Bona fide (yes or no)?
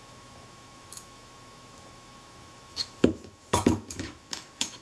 no